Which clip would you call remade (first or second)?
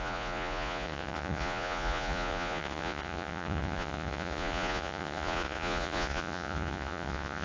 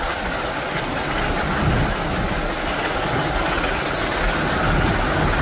first